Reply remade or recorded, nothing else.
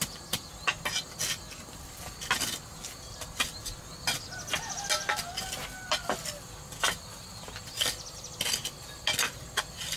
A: recorded